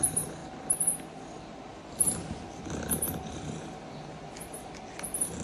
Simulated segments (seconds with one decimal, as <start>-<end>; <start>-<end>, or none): none